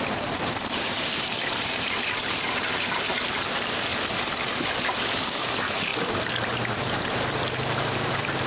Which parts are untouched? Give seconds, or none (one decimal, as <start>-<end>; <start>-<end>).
3.9-5.1; 5.9-6.5